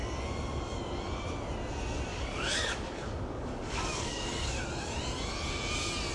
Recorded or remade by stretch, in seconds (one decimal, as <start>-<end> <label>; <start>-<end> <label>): 0.0-2.1 recorded; 2.1-4.6 remade; 4.6-6.1 recorded